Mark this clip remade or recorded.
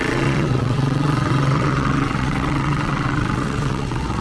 remade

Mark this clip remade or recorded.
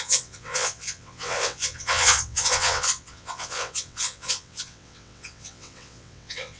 remade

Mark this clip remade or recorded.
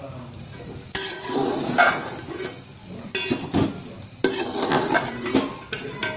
recorded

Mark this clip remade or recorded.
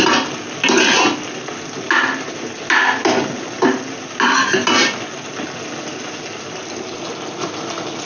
recorded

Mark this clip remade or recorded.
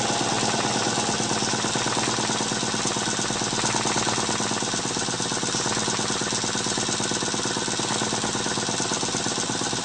recorded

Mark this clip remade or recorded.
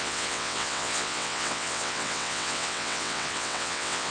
remade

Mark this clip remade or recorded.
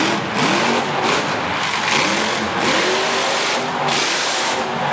recorded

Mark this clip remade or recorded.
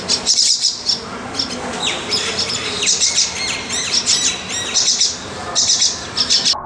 recorded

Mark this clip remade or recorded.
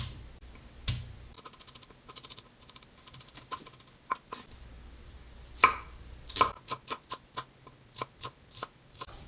recorded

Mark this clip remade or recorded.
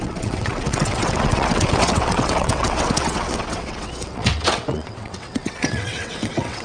remade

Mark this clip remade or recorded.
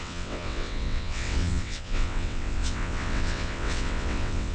remade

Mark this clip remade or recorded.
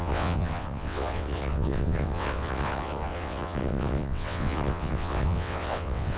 remade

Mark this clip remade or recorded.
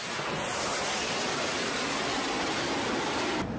recorded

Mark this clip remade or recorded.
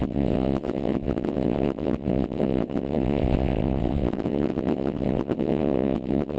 remade